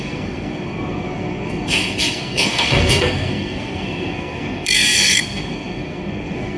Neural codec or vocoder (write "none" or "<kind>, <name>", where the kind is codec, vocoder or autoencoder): codec, SNAC